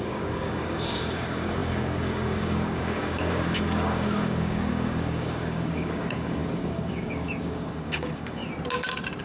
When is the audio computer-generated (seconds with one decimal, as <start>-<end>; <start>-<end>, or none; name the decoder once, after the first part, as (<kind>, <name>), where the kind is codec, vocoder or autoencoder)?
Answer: 0.0-8.4 (codec, DAC)